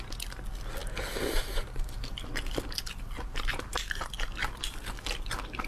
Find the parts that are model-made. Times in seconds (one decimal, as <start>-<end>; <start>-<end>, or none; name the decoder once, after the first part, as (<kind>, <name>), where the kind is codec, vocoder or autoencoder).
3.7-4.6 (vocoder, BigVGAN v2)

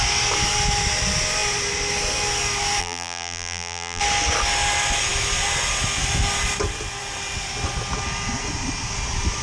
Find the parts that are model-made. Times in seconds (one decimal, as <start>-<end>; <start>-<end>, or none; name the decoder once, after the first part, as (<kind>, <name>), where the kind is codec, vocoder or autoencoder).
2.8-4.0 (vocoder, BigVGAN v2)

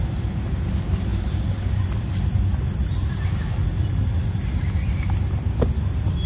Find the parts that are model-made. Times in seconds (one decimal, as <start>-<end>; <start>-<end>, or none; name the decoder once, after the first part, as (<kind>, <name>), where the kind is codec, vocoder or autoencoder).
none

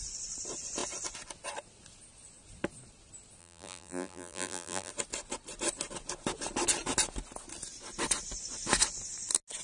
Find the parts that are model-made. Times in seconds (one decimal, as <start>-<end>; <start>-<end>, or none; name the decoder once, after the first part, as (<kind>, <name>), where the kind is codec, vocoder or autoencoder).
3.4-4.9 (vocoder, BigVGAN v2)

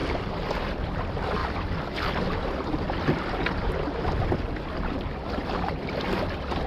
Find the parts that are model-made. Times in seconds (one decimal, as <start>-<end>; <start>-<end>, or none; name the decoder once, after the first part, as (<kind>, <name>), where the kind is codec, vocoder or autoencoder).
0.0-0.9 (vocoder, BigVGAN v2); 5.4-6.7

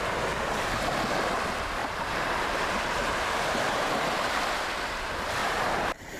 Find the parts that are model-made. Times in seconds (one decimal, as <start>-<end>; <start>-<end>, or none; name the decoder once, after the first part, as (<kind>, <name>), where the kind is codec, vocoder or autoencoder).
1.8-4.4 (vocoder, BigVGAN v2); 5.4-6.2